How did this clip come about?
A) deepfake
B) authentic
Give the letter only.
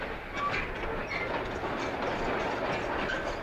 B